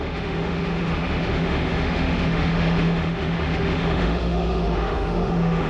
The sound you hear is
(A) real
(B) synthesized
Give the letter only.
B